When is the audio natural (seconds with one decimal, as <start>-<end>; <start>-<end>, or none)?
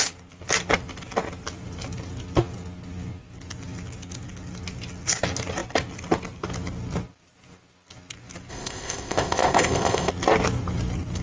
0.0-8.5; 10.1-11.2